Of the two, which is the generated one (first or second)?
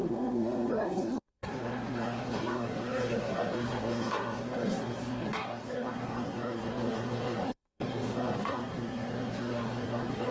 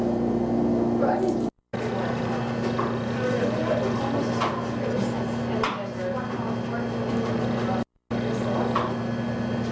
first